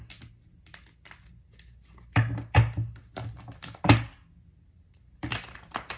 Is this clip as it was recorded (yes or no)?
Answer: yes